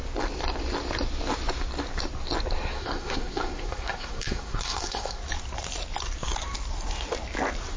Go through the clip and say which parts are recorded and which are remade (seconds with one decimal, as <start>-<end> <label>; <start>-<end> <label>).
0.0-2.7 recorded; 2.7-5.2 remade; 5.2-7.8 recorded